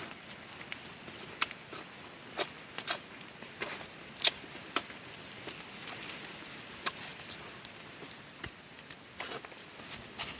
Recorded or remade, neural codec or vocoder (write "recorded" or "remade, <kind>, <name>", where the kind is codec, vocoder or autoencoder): recorded